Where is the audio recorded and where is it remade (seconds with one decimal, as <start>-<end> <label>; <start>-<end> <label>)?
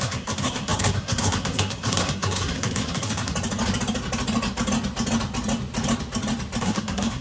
0.0-3.3 remade; 3.3-6.6 recorded; 6.6-7.2 remade